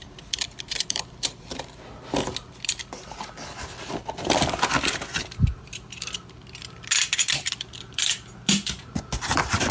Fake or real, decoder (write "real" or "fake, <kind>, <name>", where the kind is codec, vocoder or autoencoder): real